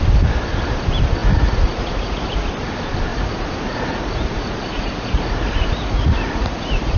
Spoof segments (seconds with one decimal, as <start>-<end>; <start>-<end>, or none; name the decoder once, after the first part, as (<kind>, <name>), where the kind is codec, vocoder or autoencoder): 1.2-2.5 (vocoder, Vocos); 3.1-7.0